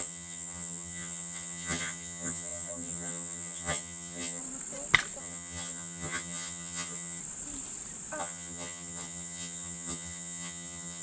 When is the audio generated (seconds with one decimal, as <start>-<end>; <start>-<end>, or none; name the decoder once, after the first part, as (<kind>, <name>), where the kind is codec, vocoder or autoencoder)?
0.0-4.4 (vocoder, HiFi-GAN); 5.2-7.2; 8.2-11.0